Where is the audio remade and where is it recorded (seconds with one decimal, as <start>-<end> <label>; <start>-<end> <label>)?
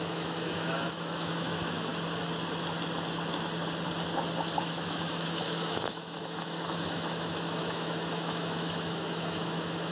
0.0-1.9 remade; 1.9-4.6 recorded; 4.6-9.9 remade